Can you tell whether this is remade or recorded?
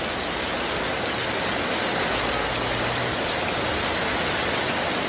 recorded